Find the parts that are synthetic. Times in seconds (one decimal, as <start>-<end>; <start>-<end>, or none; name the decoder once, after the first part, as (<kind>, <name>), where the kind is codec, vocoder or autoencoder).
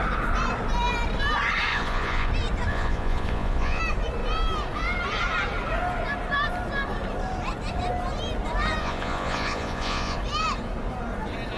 1.7-2.3 (vocoder, Vocos); 2.7-3.8; 8.8-10.2